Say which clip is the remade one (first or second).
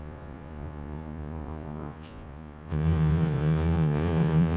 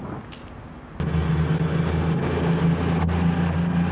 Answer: first